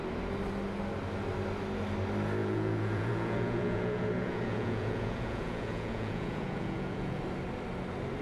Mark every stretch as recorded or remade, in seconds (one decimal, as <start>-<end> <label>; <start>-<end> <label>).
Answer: 0.0-2.4 recorded; 2.4-7.2 remade; 7.2-8.2 recorded